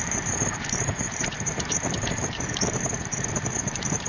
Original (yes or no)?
no